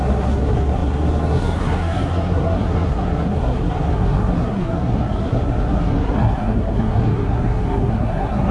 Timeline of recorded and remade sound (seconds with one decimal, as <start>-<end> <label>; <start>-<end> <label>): 0.0-8.5 remade